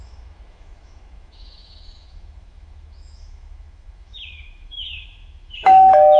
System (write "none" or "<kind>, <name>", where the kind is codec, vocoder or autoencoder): autoencoder, DAC-VAE